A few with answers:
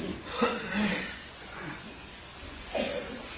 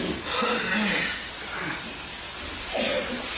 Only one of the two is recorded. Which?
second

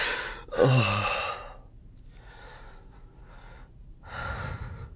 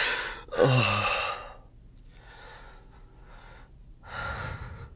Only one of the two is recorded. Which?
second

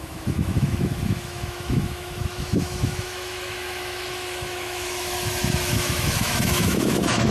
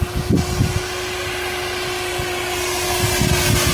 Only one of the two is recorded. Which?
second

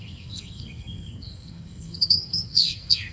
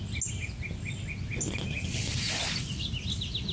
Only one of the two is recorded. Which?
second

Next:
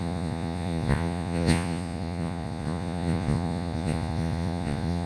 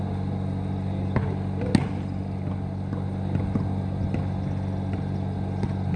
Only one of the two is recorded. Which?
second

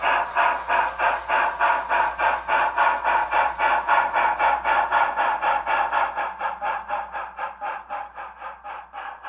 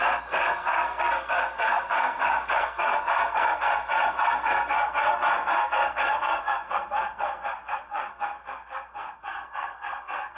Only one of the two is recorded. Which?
first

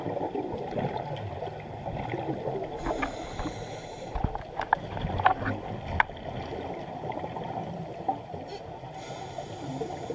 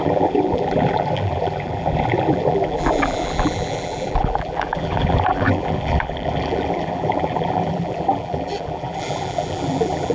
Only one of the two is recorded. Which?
first